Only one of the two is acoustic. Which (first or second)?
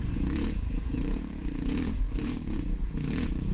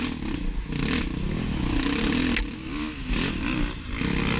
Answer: second